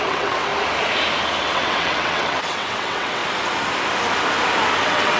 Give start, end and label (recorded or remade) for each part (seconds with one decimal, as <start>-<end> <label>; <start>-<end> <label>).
0.0-0.5 remade; 0.5-1.4 recorded; 1.4-3.2 remade; 3.2-4.8 recorded; 4.8-5.2 remade